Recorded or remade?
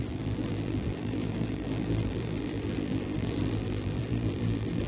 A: remade